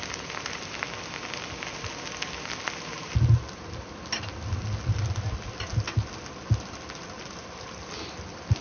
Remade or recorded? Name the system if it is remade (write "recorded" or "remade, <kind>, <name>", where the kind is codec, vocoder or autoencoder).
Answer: recorded